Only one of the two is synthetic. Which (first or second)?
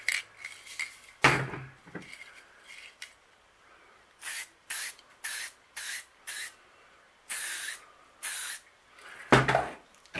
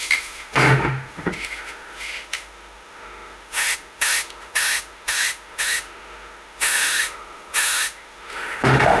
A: second